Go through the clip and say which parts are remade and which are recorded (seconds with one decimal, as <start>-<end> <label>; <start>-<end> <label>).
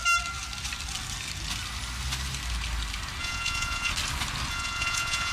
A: 0.0-3.2 recorded; 3.2-3.9 remade; 3.9-4.5 recorded; 4.5-5.3 remade